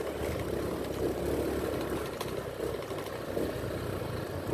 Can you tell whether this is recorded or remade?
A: recorded